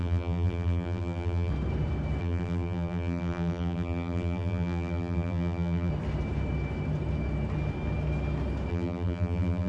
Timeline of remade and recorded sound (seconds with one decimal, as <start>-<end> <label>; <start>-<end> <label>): 0.0-1.5 remade; 1.5-2.2 recorded; 2.2-5.9 remade; 5.9-8.7 recorded; 8.7-9.7 remade

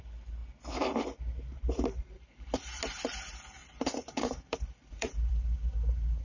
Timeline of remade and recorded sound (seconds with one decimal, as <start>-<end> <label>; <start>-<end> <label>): 0.0-1.5 recorded; 1.5-2.8 remade; 2.8-3.6 recorded; 3.6-5.3 remade; 5.3-6.2 recorded